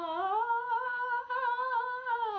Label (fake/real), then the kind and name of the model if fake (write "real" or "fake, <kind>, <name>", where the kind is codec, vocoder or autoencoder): real